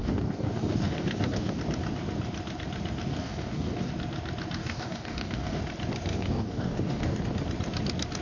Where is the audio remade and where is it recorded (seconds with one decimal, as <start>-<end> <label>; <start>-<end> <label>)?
0.0-1.6 remade; 1.6-3.1 recorded; 3.1-3.9 remade; 3.9-4.6 recorded; 4.6-5.6 remade; 5.6-6.1 recorded; 6.1-7.2 remade; 7.2-8.2 recorded